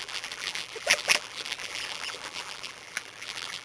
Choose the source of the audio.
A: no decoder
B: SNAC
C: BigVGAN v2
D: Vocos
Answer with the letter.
C